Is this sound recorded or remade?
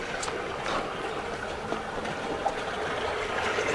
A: recorded